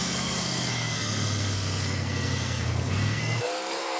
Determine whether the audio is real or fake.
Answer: fake